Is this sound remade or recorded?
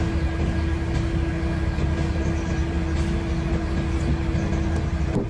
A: recorded